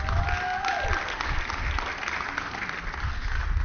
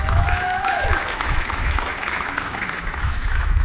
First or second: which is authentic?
first